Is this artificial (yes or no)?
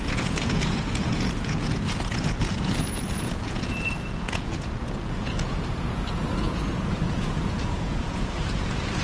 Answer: yes